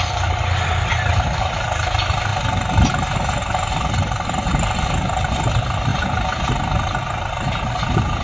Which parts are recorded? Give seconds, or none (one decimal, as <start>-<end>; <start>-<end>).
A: 2.3-3.7; 5.9-7.7